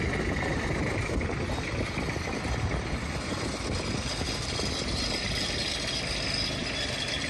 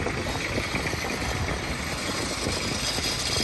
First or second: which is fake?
first